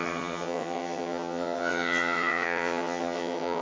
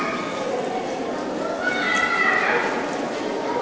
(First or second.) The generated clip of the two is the first